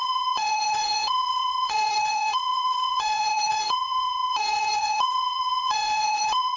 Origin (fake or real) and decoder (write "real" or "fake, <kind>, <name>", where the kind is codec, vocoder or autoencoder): fake, vocoder, Vocos